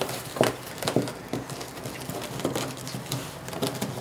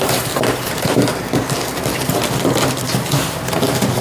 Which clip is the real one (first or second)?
first